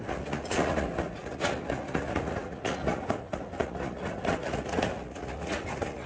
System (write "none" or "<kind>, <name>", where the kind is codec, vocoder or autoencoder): vocoder, Vocos